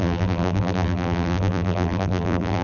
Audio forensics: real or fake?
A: fake